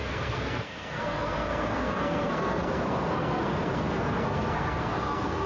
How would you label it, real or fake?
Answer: fake